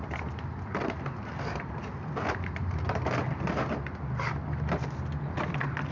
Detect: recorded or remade recorded